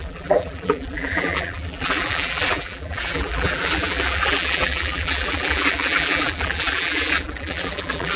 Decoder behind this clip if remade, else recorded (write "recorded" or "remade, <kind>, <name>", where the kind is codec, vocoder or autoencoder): remade, vocoder, BigVGAN v2